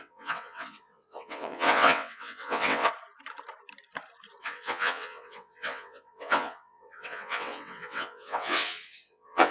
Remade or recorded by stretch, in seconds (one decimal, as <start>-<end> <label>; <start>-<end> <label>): 0.0-2.9 remade; 2.9-4.4 recorded; 4.4-9.5 remade